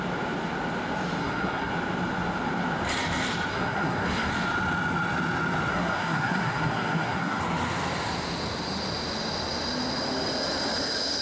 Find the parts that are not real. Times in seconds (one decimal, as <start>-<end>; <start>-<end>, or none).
1.2-1.7; 3.5-4.3; 5.7-7.4